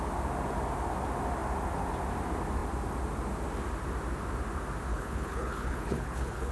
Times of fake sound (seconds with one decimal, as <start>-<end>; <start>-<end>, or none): 4.9-6.5